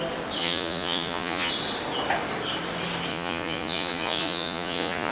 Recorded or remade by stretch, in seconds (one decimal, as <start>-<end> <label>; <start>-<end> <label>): 0.0-0.4 recorded; 0.4-1.5 remade; 1.5-3.1 recorded; 3.1-5.1 remade